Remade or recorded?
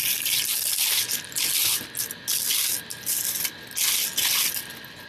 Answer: recorded